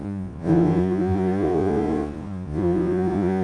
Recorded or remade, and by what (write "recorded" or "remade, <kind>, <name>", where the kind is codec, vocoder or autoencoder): remade, vocoder, Vocos